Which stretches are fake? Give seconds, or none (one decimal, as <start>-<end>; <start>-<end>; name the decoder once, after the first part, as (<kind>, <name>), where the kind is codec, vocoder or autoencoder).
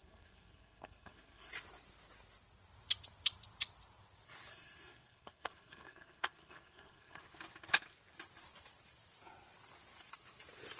0.0-1.5 (codec, SNAC); 4.5-7.2